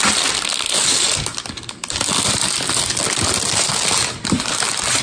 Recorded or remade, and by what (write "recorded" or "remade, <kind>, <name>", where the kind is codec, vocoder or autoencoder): recorded